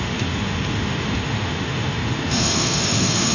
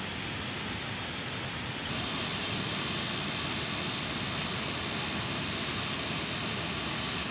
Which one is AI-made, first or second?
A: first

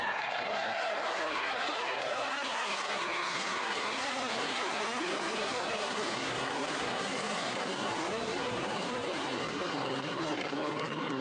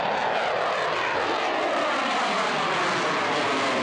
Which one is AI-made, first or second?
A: first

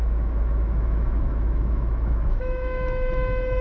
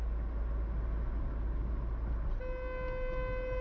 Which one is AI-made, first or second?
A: first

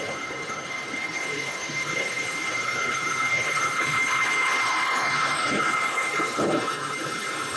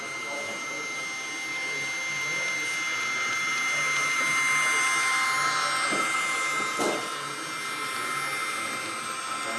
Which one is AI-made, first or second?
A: first